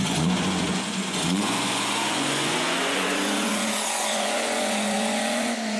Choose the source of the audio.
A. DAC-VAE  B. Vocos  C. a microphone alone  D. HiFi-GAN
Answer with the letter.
B